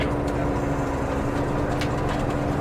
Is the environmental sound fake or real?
real